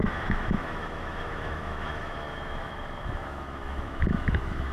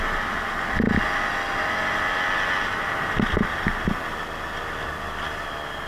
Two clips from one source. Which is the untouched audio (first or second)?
second